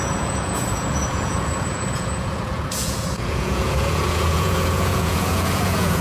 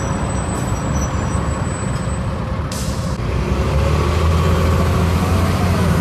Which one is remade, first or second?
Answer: first